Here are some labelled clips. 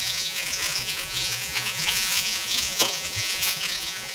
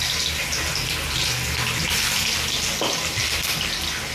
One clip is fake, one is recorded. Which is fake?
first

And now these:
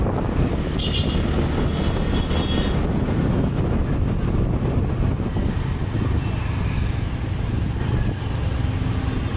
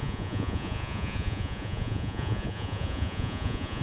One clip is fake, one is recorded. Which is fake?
second